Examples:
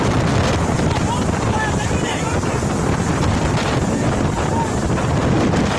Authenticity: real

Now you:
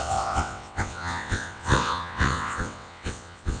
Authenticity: fake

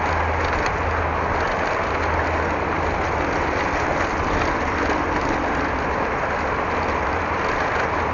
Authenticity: real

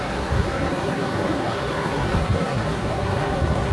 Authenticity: fake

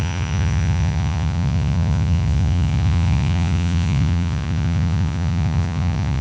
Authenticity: fake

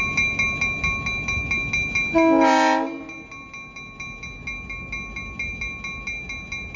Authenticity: real